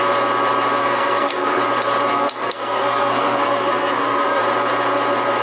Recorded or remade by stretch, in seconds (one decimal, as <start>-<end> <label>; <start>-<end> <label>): 0.0-0.8 recorded; 0.8-1.6 remade; 1.6-2.1 recorded; 2.1-4.4 remade; 4.4-5.4 recorded